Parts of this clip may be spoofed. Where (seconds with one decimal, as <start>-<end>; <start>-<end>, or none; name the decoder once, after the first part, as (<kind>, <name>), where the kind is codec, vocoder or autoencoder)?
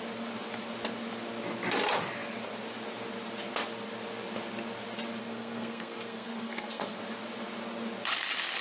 5.2-7.0 (codec, SNAC)